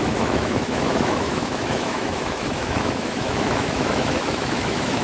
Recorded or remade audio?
remade